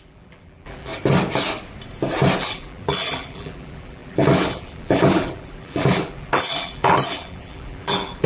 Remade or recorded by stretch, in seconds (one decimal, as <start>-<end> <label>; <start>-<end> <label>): 0.0-0.9 remade; 0.9-2.4 recorded; 2.4-8.3 remade